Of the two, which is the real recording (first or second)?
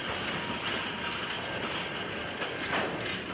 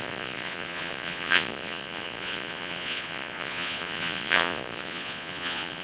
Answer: first